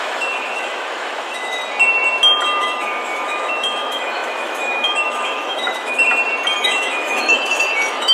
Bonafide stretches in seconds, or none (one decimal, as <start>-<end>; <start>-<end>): 1.6-2.6; 6.1-6.6